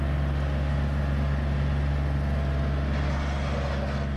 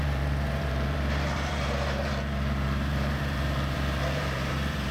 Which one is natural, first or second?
first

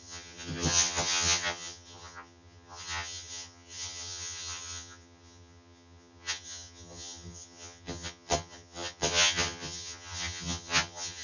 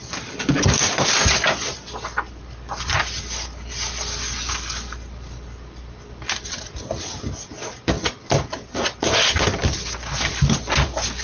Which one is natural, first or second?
second